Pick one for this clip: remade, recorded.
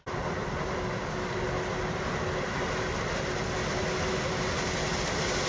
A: recorded